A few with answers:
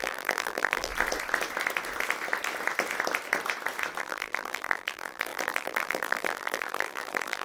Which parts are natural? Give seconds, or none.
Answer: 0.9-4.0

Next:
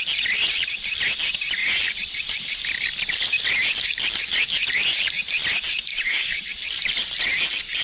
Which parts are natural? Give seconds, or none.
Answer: 0.0-5.9; 6.4-7.8

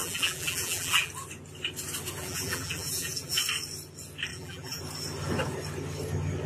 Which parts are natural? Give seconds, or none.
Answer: 1.1-2.2; 3.4-4.3; 4.8-6.5

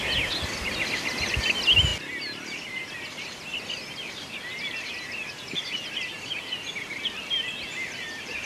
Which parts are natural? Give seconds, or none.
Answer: 0.0-8.5

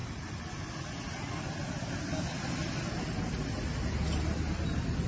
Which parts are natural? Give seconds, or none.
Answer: 0.6-5.1

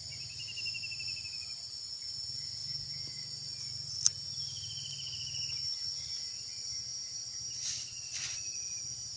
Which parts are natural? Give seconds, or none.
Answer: 0.0-9.2

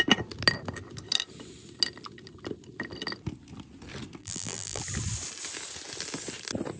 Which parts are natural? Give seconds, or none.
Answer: 0.0-4.2; 4.8-6.8